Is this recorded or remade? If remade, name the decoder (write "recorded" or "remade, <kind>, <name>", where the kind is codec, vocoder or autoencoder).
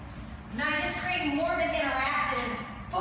recorded